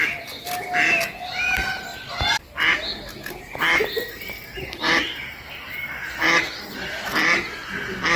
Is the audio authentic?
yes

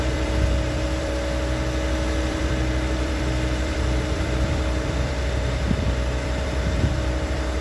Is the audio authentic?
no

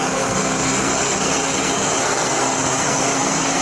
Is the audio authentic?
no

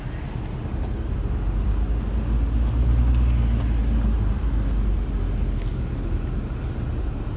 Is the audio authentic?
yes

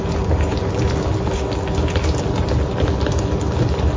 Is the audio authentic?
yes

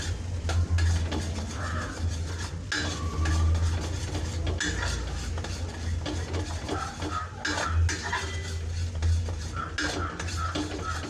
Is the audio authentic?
yes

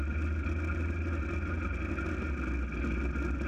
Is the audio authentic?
yes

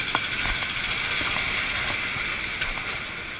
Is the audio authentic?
yes